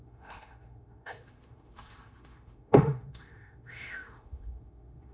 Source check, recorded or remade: remade